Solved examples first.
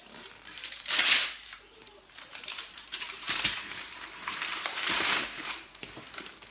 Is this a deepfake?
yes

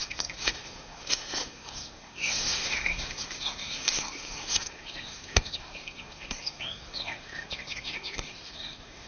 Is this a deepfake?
yes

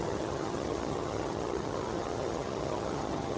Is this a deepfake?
yes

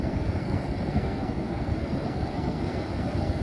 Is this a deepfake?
yes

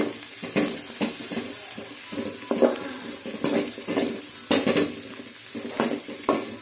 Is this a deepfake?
no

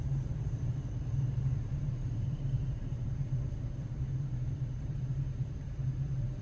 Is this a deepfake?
yes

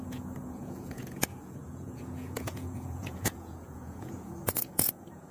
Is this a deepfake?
yes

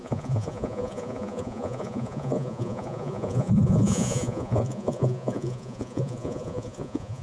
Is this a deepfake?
yes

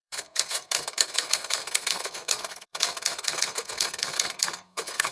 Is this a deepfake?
yes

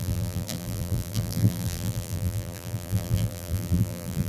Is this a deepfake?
yes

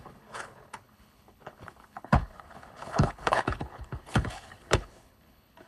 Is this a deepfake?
yes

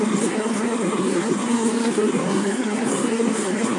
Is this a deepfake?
yes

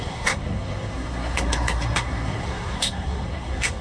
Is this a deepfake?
yes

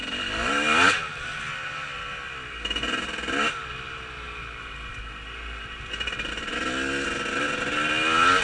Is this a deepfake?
no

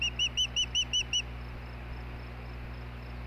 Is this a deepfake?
no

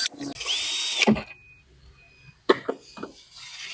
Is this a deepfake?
no